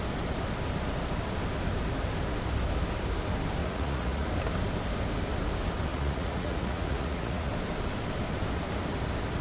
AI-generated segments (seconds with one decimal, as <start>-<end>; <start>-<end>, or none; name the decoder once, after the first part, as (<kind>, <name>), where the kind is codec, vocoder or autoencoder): 3.6-4.3 (vocoder, Vocos); 5.9-7.5